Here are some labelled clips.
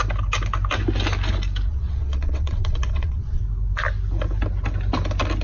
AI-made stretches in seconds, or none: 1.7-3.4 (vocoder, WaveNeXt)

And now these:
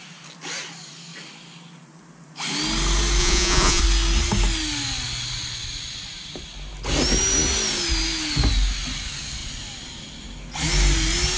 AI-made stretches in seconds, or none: 3.2-3.8 (vocoder, Vocos)

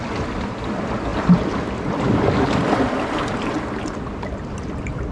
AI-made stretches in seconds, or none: none